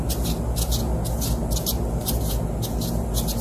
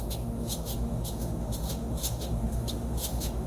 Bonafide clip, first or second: first